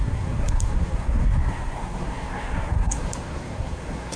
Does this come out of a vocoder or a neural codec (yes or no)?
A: yes